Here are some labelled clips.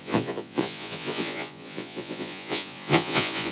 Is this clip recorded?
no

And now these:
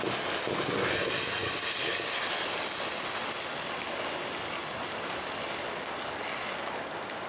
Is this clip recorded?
yes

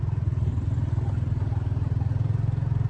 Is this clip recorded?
yes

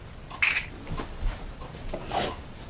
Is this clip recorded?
yes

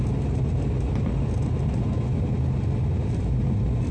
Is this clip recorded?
yes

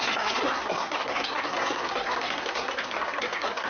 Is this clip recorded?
no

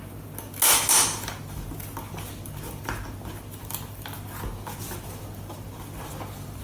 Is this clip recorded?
yes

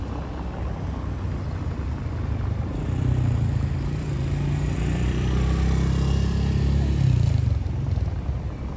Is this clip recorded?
yes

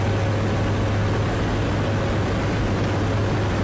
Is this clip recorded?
yes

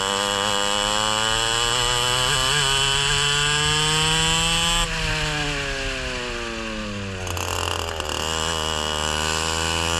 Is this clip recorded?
yes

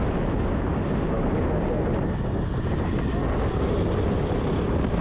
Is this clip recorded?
yes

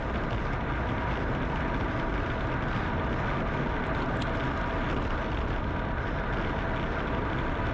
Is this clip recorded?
yes